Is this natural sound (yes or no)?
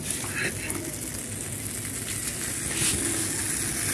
yes